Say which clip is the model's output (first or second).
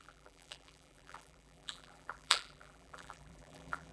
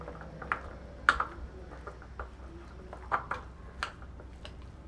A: first